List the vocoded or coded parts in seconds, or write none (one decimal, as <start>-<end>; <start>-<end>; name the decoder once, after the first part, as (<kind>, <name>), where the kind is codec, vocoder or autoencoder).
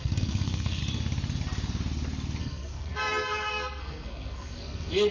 0.0-0.8 (codec, SNAC); 2.4-5.1